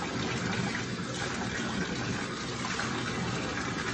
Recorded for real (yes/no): yes